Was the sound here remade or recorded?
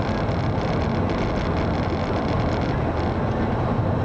recorded